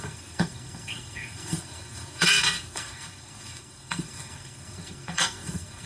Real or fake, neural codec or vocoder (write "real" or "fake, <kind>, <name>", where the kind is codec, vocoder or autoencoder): fake, codec, SNAC